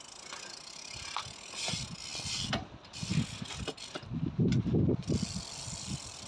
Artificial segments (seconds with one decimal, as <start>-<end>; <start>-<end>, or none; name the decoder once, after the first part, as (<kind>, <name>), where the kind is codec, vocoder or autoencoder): none